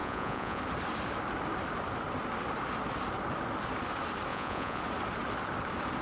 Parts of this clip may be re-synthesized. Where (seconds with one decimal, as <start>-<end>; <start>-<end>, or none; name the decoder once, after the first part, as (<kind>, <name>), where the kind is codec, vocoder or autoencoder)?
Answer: 0.0-0.6 (vocoder, Vocos); 4.3-4.8